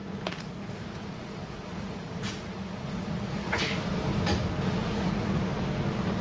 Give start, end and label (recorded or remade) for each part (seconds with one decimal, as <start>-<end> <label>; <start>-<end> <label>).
0.0-3.6 remade; 3.6-4.8 recorded; 4.8-5.4 remade; 5.4-6.2 recorded